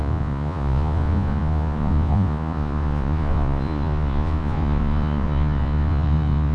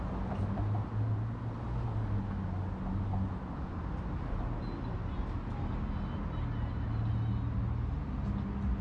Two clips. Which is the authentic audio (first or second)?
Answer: second